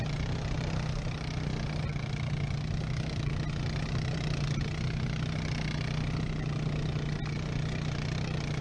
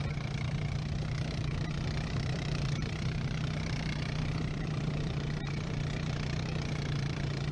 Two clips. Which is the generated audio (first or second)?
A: second